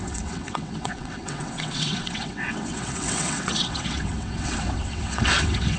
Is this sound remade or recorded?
remade